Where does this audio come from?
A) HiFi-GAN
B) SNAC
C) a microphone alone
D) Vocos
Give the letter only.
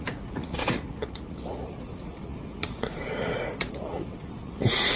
D